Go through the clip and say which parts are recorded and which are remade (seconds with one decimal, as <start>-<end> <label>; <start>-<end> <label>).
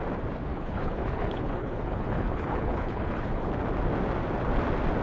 0.0-0.5 recorded; 0.5-3.5 remade; 3.5-5.0 recorded